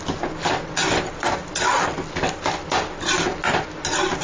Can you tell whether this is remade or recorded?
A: recorded